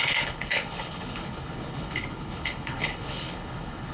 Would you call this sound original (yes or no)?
no